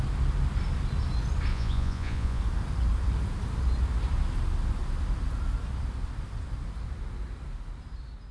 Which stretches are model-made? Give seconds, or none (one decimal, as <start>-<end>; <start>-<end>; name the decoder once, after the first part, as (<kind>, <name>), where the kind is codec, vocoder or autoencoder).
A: 1.5-2.4 (vocoder, Vocos)